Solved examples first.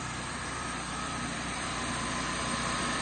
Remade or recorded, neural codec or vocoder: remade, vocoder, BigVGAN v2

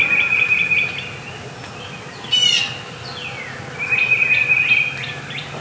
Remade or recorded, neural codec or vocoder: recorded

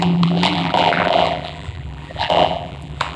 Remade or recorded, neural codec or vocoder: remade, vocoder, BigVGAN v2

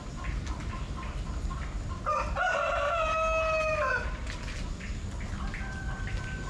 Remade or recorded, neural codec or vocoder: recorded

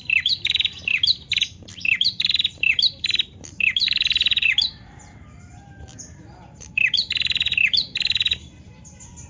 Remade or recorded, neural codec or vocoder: remade, vocoder, BigVGAN v2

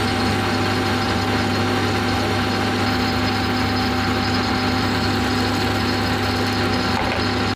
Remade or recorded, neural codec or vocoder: recorded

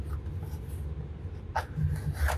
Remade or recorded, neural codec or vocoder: recorded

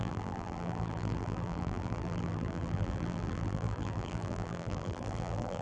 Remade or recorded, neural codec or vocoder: remade, vocoder, BigVGAN v2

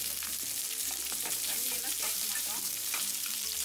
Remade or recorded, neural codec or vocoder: remade, vocoder, BigVGAN v2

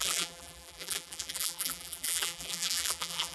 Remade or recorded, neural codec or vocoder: remade, vocoder, BigVGAN v2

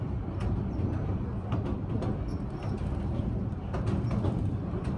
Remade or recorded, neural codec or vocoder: recorded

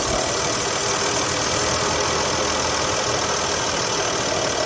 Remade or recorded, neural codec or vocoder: recorded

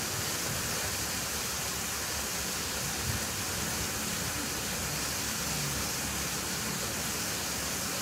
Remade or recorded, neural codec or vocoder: recorded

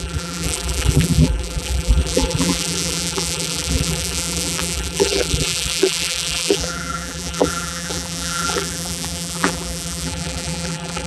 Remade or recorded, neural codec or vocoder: remade, vocoder, BigVGAN v2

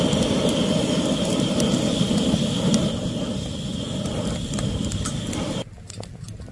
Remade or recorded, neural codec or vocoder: recorded